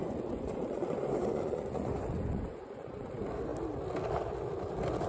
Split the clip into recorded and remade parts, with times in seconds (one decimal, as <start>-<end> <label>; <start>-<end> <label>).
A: 0.0-3.1 remade; 3.1-5.1 recorded